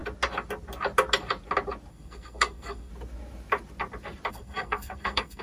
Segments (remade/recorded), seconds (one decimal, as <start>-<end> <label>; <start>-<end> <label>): 0.0-1.9 recorded; 1.9-2.9 remade; 2.9-4.3 recorded; 4.3-5.4 remade